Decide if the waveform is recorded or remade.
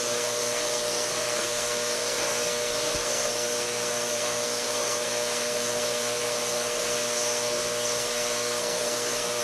remade